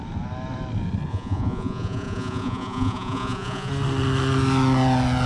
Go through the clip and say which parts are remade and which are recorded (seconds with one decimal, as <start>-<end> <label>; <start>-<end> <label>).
0.0-1.1 recorded; 1.1-3.7 remade; 3.7-5.3 recorded